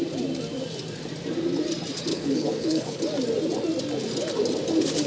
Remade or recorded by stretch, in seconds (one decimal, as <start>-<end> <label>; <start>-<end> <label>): 0.0-2.1 recorded; 2.1-3.0 remade; 3.0-5.1 recorded